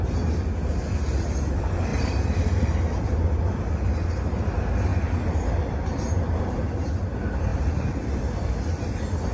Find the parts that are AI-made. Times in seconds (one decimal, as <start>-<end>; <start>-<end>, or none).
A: 1.9-2.8; 5.9-6.6; 7.5-8.1